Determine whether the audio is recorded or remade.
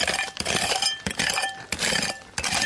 remade